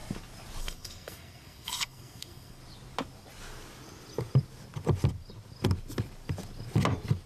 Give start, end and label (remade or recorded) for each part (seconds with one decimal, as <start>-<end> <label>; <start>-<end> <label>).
0.0-0.6 recorded; 0.6-2.6 remade; 2.6-7.3 recorded